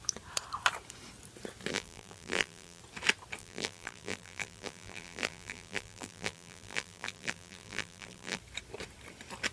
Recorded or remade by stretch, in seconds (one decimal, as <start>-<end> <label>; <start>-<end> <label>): 0.0-1.7 recorded; 1.7-2.8 remade; 2.8-3.4 recorded; 3.4-8.4 remade; 8.4-9.5 recorded

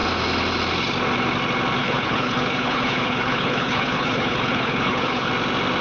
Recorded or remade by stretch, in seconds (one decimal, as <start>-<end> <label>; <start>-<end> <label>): 0.0-1.8 recorded; 1.8-5.3 remade; 5.3-5.8 recorded

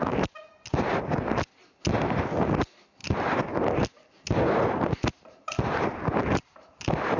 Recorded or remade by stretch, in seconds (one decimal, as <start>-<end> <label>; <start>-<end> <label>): 0.0-7.2 recorded

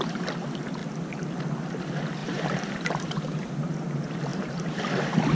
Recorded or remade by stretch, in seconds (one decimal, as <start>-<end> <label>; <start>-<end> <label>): 0.0-2.2 recorded; 2.2-3.5 remade; 3.5-4.3 recorded; 4.3-4.8 remade; 4.8-5.3 recorded

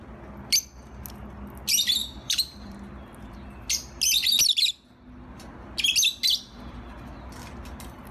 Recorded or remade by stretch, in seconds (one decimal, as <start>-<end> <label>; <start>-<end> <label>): 0.0-2.0 recorded; 2.0-2.9 remade; 2.9-8.1 recorded